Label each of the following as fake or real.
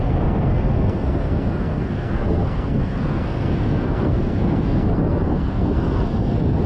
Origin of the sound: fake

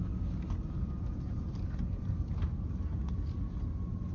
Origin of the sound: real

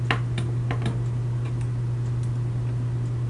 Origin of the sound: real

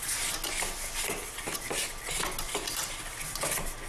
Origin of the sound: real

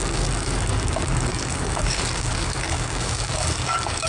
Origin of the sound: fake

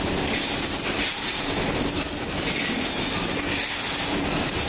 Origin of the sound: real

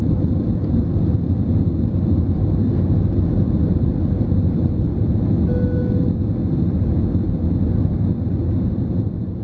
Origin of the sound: real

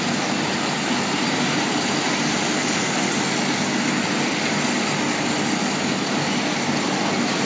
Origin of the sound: real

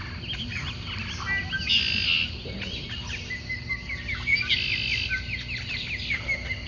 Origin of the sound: real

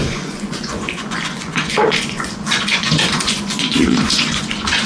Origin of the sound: fake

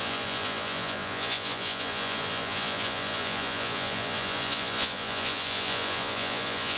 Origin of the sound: fake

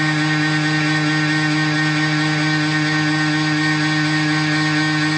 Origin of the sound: real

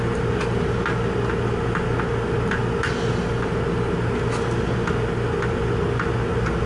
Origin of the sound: real